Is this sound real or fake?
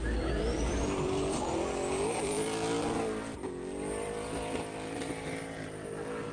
real